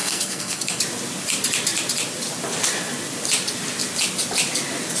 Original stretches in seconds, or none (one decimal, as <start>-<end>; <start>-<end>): 0.8-5.0